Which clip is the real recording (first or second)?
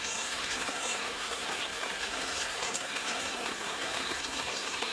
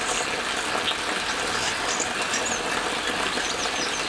second